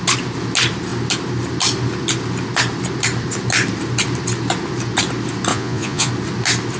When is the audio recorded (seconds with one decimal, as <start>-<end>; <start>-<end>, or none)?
0.0-5.5; 6.1-6.8